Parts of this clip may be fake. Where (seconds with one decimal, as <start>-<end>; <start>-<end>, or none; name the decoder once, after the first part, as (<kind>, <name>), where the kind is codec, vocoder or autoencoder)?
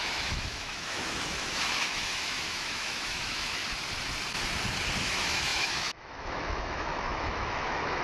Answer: 0.0-3.6 (autoencoder, DAC-VAE); 5.0-8.0